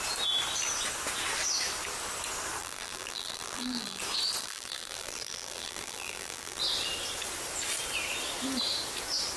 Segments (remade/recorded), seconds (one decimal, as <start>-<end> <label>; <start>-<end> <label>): 0.0-2.6 recorded; 2.6-4.0 remade; 4.0-4.4 recorded; 4.4-6.6 remade; 6.6-9.4 recorded